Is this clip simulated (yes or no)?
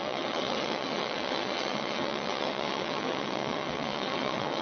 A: yes